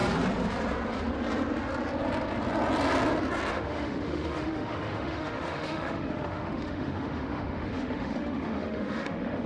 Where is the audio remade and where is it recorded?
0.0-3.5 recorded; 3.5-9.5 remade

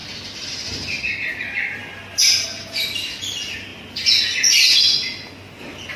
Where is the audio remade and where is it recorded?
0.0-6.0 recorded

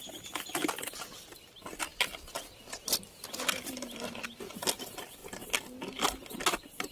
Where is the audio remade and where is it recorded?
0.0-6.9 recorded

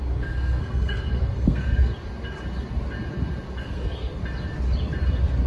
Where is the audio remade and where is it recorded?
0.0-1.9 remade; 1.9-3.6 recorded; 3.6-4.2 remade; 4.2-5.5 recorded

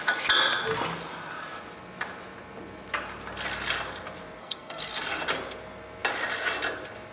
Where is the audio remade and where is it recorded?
0.0-4.4 recorded; 4.4-5.2 remade; 5.2-7.1 recorded

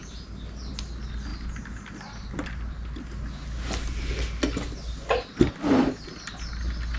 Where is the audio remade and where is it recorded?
0.0-0.7 remade; 0.7-7.0 recorded